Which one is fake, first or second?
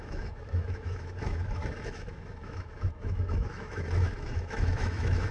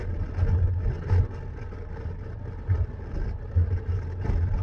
first